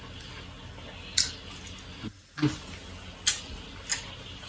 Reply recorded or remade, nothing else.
recorded